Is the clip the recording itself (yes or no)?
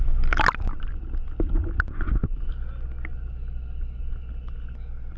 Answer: yes